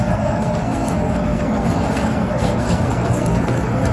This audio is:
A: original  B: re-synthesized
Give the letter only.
B